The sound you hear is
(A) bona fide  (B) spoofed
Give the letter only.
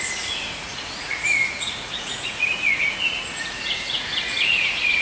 B